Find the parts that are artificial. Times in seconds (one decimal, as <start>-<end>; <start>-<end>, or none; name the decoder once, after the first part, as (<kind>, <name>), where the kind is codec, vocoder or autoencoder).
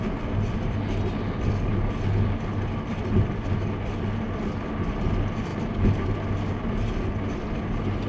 none